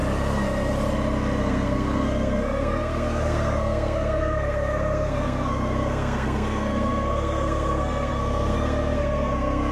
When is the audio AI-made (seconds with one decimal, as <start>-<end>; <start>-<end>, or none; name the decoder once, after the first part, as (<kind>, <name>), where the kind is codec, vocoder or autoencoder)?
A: 1.4-9.7 (codec, SNAC)